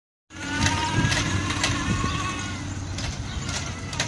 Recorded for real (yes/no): yes